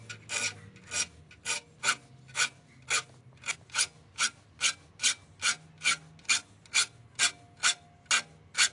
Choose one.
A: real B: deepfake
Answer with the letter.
A